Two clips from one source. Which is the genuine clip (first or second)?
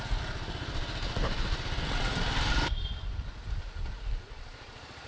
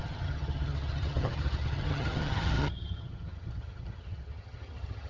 first